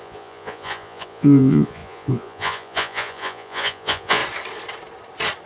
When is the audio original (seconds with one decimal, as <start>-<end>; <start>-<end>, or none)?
4.2-5.5